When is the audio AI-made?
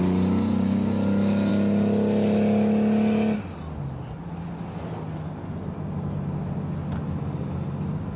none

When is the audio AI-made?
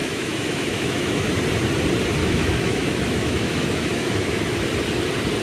0.0-1.3 (autoencoder, DAC-VAE); 2.2-4.6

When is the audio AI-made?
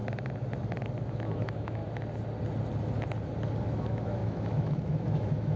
1.1-1.8 (autoencoder, DAC-VAE); 3.6-5.6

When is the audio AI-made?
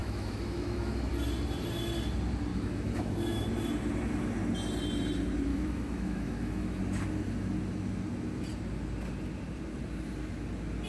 0.0-1.1 (autoencoder, DAC-VAE); 2.5-3.5; 5.5-6.8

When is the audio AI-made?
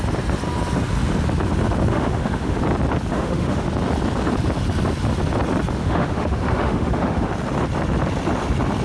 1.9-2.6 (autoencoder, DAC-VAE); 3.1-3.7; 5.8-7.3